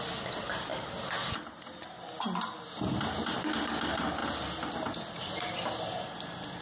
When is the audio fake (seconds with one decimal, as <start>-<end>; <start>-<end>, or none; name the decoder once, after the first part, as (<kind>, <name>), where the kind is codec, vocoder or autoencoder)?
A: none